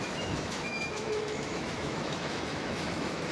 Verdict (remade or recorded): remade